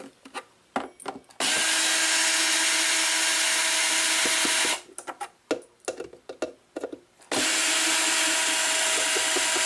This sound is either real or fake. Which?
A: real